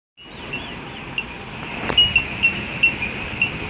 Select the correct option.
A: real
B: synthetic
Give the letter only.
A